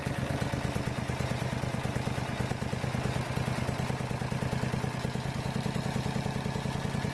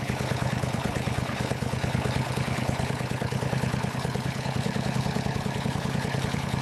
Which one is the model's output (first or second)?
second